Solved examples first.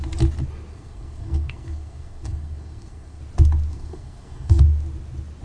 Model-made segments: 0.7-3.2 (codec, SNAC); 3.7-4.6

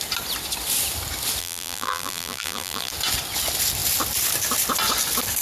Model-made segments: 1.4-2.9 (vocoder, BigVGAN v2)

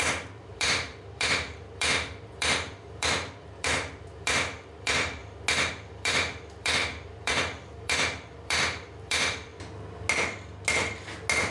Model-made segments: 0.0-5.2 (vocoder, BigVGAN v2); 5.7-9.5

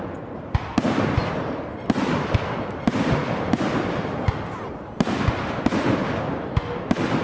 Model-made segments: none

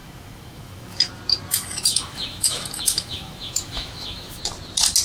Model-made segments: 0.0-1.1 (autoencoder, DAC-VAE); 1.5-4.4

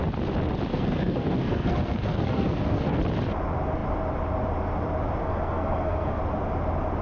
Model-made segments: 0.7-3.0 (codec, SNAC); 5.2-6.2

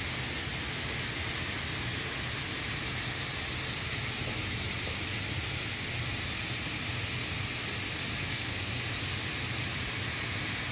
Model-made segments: 8.2-8.7 (codec, SNAC)

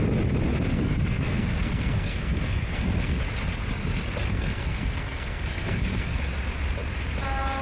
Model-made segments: 0.7-3.2 (codec, SNAC); 4.2-6.2